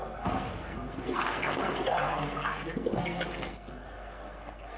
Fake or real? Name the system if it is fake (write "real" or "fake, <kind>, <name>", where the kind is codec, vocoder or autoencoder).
fake, codec, SNAC